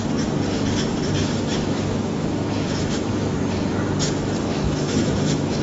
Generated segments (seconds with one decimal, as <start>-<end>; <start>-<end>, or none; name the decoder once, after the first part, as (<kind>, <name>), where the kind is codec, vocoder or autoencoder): 1.2-3.3 (autoencoder, DAC-VAE); 4.5-5.6